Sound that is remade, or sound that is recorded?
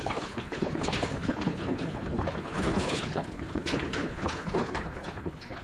remade